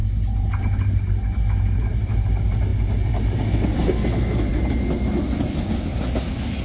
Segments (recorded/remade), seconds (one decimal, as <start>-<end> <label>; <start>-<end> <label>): 0.0-6.6 recorded